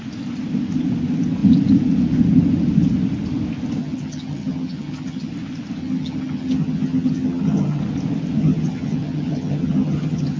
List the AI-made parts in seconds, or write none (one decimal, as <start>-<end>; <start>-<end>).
3.8-5.3; 5.8-7.8; 8.4-10.4